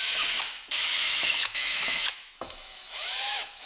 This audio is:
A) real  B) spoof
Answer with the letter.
B